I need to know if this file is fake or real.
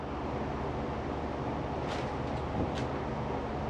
real